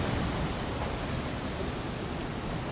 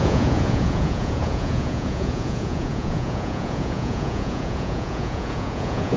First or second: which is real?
first